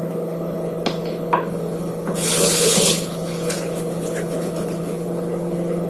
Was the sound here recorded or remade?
remade